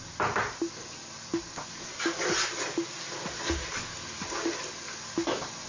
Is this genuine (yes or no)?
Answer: yes